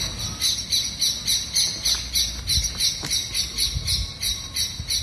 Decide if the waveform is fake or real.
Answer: real